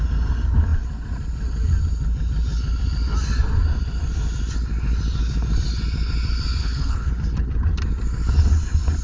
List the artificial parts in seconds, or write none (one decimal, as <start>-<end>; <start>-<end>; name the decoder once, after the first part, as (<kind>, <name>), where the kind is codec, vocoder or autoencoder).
6.6-7.1 (codec, HILCodec)